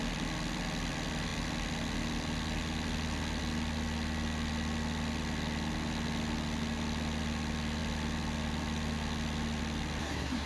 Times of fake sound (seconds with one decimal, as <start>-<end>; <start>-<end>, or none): 10.0-10.5